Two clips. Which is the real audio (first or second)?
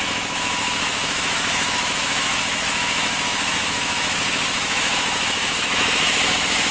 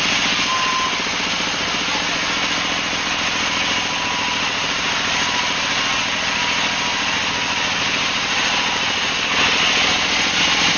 second